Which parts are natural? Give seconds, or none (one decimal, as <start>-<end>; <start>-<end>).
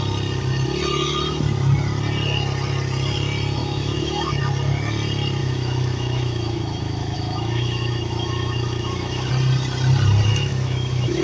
0.0-3.6; 4.4-5.4; 9.3-10.3